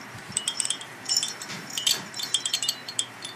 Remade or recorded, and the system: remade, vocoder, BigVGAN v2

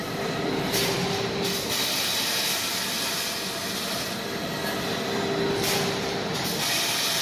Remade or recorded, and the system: recorded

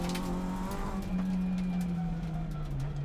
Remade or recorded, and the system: recorded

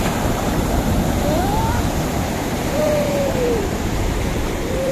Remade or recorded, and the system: remade, vocoder, BigVGAN v2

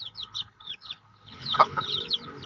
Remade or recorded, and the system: remade, codec, HILCodec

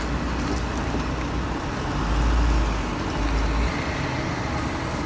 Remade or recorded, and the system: recorded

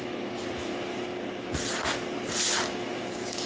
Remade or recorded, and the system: recorded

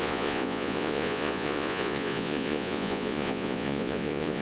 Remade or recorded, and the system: remade, vocoder, Vocos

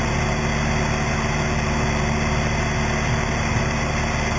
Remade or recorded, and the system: recorded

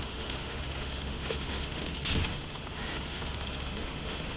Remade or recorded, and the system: remade, autoencoder, DAC-VAE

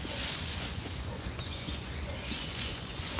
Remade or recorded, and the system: remade, vocoder, Vocos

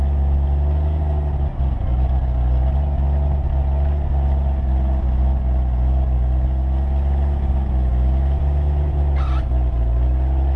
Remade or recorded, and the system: recorded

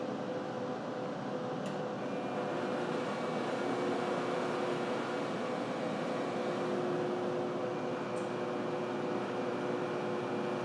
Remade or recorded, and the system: recorded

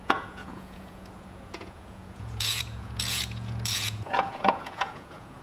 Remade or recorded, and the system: remade, vocoder, Vocos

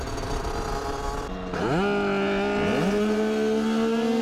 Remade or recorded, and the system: recorded